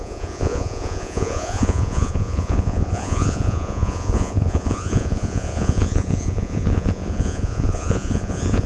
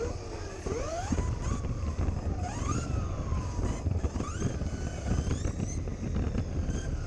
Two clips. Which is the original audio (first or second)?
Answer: second